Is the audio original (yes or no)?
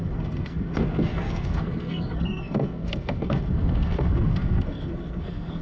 no